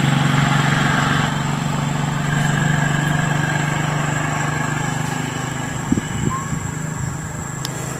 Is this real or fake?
real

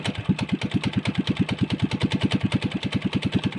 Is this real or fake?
real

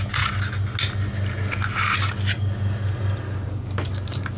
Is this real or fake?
real